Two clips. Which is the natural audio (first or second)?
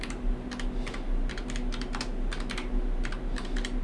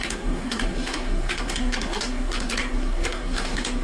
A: first